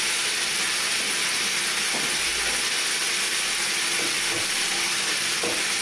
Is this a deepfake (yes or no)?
no